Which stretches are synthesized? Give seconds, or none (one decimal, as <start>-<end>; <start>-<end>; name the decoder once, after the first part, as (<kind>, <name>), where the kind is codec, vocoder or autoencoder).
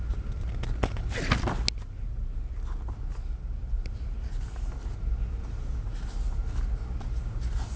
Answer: none